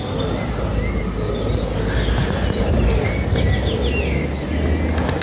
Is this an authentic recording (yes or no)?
yes